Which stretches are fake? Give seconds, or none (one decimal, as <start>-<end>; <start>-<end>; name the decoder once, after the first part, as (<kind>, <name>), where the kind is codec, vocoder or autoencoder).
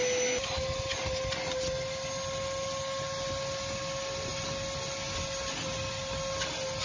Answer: none